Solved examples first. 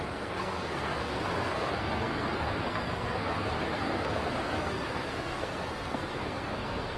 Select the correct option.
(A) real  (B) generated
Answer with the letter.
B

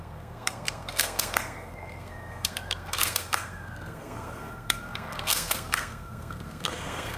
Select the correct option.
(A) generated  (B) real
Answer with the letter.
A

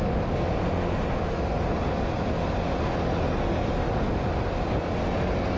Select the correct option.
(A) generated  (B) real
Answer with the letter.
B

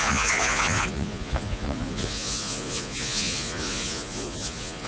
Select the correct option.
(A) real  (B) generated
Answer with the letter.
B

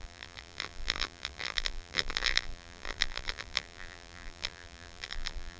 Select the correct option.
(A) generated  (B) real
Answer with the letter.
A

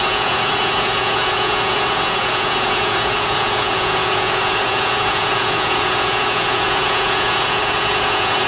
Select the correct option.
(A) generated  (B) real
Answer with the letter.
A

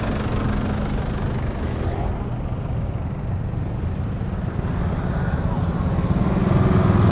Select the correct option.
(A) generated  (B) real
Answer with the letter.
B